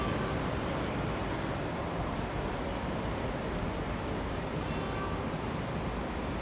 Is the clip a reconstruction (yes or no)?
no